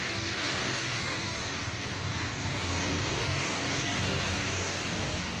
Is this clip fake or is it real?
fake